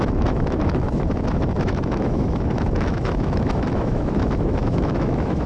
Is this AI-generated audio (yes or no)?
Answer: yes